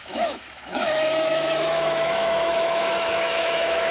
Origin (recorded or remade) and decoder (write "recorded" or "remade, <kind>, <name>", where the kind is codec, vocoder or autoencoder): remade, autoencoder, DAC-VAE